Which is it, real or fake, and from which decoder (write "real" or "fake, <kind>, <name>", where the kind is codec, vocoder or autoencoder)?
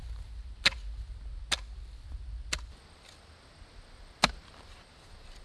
real